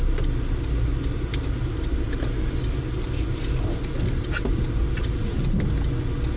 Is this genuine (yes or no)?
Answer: yes